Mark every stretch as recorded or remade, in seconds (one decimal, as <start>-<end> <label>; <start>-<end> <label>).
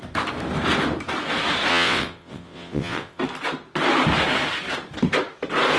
0.0-1.7 recorded; 1.7-3.2 remade; 3.2-5.8 recorded